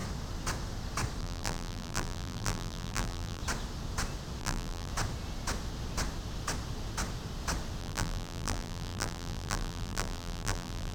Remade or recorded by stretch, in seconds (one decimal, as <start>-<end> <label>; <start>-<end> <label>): 0.0-1.2 recorded; 1.2-3.4 remade; 3.4-4.4 recorded; 4.4-4.9 remade; 4.9-7.8 recorded; 7.8-10.9 remade